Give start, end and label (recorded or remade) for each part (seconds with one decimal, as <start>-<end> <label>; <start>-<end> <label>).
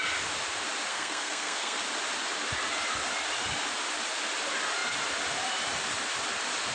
0.0-0.9 recorded; 0.9-1.8 remade; 1.8-6.7 recorded